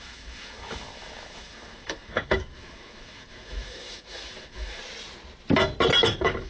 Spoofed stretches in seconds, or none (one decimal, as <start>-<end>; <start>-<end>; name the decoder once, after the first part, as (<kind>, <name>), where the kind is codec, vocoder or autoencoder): 0.0-4.8 (autoencoder, DAC-VAE); 6.0-6.5